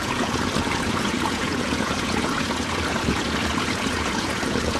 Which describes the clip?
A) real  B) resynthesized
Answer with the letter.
B